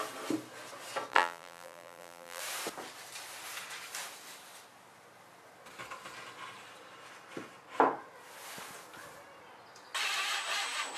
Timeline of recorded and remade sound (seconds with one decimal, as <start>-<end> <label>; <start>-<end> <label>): 0.0-1.1 recorded; 1.1-2.4 remade; 2.4-11.0 recorded